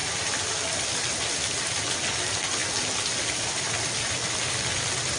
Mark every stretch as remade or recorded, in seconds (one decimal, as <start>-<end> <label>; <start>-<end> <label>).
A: 0.0-5.2 recorded